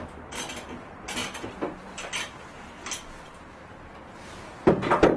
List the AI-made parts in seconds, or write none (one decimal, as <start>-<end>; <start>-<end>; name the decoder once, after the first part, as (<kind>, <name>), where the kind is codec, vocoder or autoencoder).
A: none